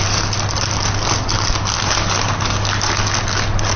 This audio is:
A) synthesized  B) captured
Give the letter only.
B